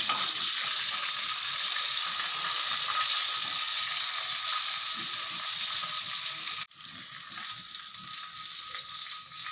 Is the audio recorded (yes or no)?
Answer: yes